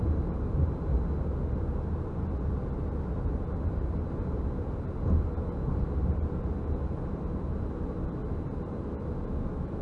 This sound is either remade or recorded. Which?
recorded